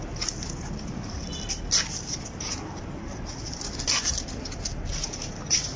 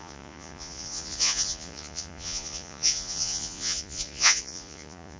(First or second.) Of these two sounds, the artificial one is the second